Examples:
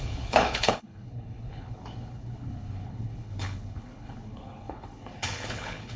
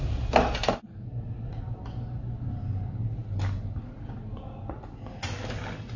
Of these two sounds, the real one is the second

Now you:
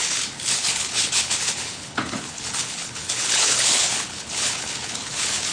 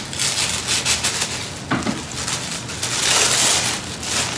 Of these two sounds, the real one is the second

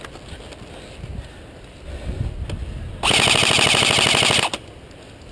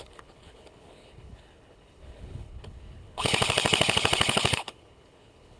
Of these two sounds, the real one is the first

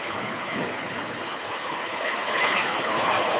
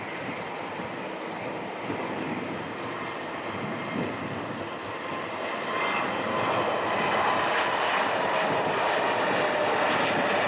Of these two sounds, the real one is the second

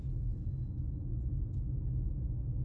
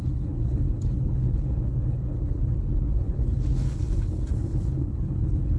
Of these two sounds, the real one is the first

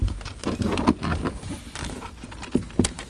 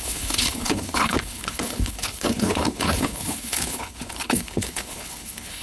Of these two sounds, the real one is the first